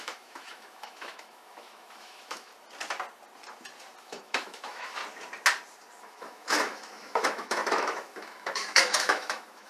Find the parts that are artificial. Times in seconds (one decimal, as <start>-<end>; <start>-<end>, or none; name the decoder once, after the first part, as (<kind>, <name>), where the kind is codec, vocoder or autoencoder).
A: 0.0-2.5 (autoencoder, DAC-VAE); 4.0-5.0; 6.0-9.7